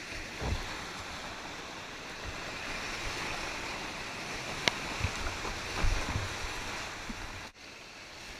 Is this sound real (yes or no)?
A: yes